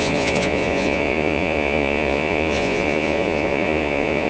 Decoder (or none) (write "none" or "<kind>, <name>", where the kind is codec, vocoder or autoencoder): vocoder, Vocos